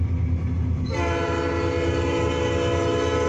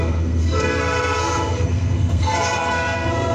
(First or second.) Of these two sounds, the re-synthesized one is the second